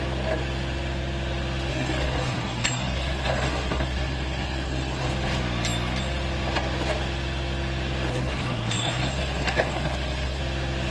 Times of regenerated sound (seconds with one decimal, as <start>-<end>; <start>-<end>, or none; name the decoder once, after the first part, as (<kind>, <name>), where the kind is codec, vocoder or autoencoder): 1.7-5.1 (codec, SNAC); 8.1-10.4